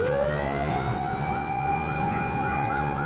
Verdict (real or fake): fake